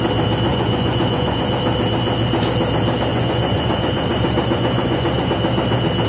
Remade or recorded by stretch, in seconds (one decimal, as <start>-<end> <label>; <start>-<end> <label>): 0.0-0.5 recorded; 0.5-1.5 remade; 1.5-3.1 recorded; 3.1-5.3 remade; 5.3-6.1 recorded